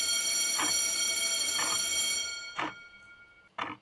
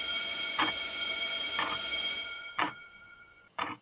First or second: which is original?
first